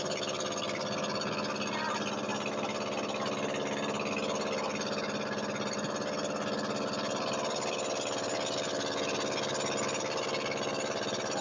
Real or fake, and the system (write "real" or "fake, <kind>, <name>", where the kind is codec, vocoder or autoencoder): real